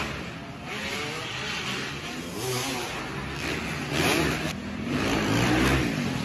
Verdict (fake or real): real